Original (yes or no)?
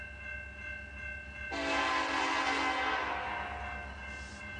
yes